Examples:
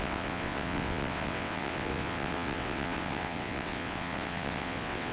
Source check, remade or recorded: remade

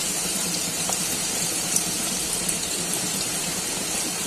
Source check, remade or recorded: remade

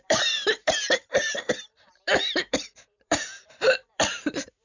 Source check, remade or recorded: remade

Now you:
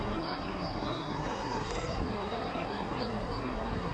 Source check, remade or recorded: remade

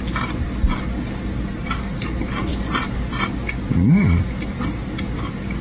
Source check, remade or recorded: recorded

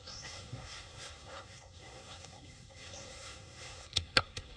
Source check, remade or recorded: remade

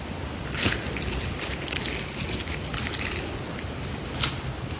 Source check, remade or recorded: recorded